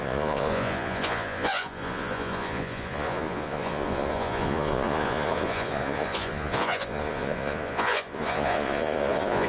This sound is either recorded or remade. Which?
remade